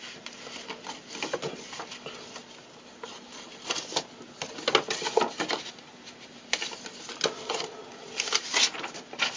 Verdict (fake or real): real